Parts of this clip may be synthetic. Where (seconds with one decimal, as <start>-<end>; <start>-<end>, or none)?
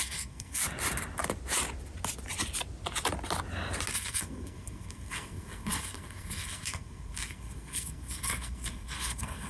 0.0-0.6; 3.9-9.5